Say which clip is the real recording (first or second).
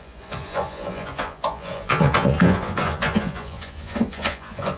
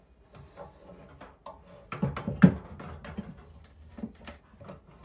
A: second